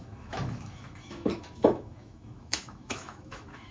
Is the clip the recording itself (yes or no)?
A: no